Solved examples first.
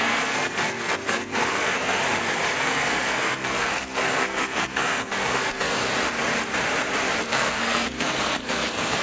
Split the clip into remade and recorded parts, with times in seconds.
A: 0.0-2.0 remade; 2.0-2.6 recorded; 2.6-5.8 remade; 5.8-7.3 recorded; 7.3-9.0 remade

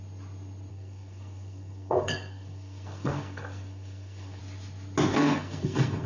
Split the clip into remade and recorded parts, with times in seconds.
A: 0.0-0.7 recorded; 0.7-4.4 remade; 4.4-5.1 recorded; 5.1-6.1 remade

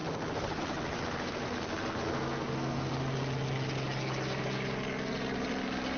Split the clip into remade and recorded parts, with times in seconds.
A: 0.0-2.1 recorded; 2.1-2.9 remade; 2.9-6.0 recorded

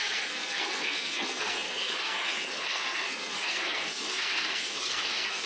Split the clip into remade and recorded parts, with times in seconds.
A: 0.0-5.5 remade

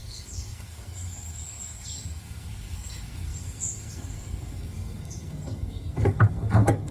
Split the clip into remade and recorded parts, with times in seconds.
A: 0.0-6.9 remade

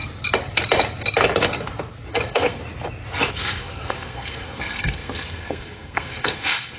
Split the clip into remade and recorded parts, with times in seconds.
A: 0.0-2.1 recorded; 2.1-2.6 remade; 2.6-3.3 recorded; 3.3-6.8 remade

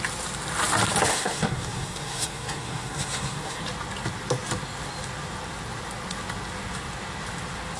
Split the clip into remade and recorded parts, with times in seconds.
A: 0.0-1.1 recorded; 1.1-3.6 remade; 3.6-7.8 recorded

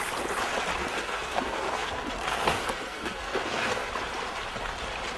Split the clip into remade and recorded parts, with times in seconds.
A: 0.0-0.8 recorded; 0.8-3.9 remade; 3.9-5.2 recorded